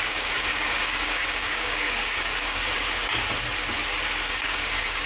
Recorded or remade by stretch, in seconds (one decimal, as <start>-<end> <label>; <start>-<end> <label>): 0.0-2.6 remade; 2.6-4.3 recorded; 4.3-5.1 remade